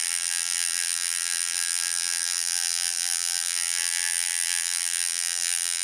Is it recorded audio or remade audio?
remade